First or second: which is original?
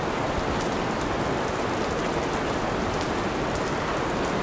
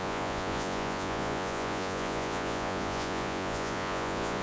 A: first